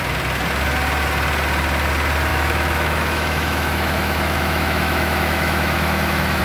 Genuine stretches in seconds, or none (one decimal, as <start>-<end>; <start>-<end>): 0.0-2.3